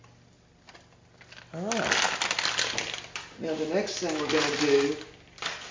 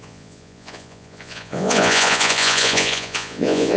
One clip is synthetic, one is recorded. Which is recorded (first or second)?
first